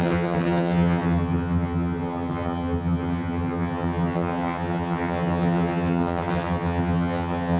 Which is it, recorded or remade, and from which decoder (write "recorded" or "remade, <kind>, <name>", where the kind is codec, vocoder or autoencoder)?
remade, vocoder, HiFi-GAN